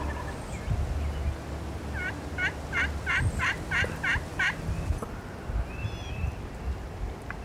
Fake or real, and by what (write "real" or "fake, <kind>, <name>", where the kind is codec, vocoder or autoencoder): real